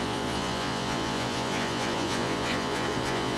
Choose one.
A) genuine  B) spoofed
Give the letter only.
B